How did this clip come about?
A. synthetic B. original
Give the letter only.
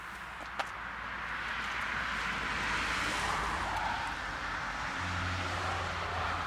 B